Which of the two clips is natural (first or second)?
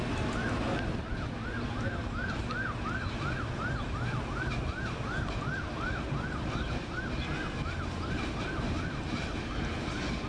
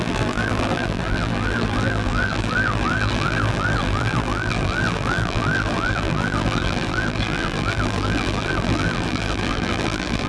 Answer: first